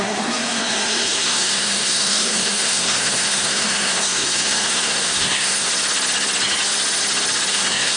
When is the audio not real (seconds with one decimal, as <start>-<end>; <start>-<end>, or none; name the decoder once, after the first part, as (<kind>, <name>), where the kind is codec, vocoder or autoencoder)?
0.0-5.7 (codec, SNAC); 7.5-8.0